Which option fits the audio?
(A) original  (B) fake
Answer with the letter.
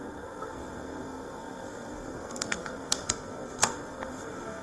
B